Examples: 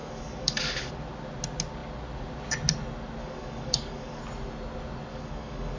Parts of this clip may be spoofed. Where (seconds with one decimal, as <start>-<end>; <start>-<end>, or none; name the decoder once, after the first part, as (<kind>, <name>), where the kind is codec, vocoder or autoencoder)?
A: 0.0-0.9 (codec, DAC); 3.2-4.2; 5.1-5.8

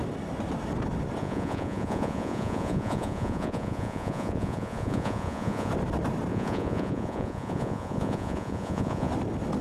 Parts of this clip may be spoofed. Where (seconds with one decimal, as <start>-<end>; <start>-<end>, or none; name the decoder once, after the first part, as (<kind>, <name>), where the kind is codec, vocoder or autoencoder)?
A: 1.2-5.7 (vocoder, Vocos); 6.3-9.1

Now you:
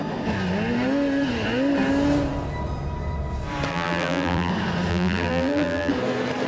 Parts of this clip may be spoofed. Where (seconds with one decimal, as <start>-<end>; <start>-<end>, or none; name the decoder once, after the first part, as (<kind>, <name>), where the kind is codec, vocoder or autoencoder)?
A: 3.7-4.5 (vocoder, BigVGAN v2); 4.9-5.9

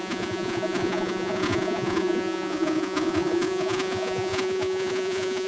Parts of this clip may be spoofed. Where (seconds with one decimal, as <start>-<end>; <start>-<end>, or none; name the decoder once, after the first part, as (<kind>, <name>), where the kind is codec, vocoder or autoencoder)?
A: 0.0-5.5 (vocoder, Vocos)

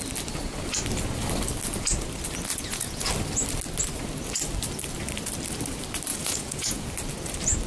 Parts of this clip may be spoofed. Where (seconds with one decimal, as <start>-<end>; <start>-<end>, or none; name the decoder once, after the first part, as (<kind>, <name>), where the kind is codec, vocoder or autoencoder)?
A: 2.5-3.1 (vocoder, Vocos); 6.1-6.9